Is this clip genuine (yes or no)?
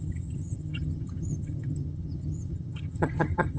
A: no